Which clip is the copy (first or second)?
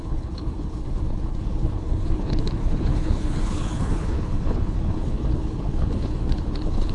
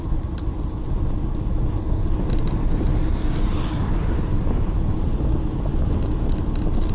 first